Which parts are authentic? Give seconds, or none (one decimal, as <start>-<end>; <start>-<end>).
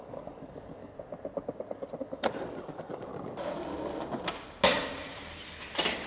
0.9-2.0; 3.1-6.1